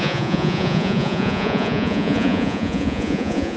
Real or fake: fake